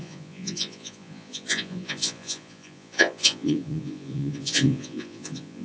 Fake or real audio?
fake